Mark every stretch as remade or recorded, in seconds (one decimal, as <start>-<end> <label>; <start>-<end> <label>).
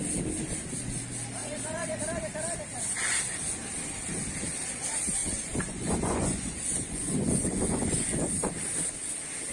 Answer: 0.0-1.4 recorded; 1.4-2.0 remade; 2.0-5.2 recorded; 5.2-8.3 remade; 8.3-9.5 recorded